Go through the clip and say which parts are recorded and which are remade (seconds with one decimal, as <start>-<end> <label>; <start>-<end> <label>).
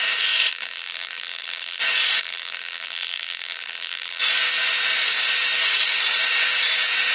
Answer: 0.0-0.5 recorded; 0.5-1.8 remade; 1.8-2.2 recorded; 2.2-4.2 remade; 4.2-7.1 recorded